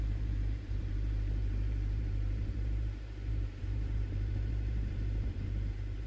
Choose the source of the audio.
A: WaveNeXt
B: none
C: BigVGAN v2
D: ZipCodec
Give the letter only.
C